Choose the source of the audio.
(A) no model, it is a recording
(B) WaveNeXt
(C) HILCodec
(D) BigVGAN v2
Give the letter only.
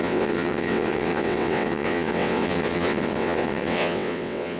B